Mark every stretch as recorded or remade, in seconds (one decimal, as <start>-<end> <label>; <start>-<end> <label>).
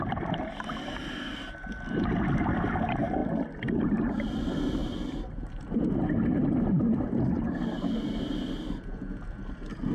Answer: 0.0-4.8 recorded; 4.8-5.5 remade; 5.5-9.9 recorded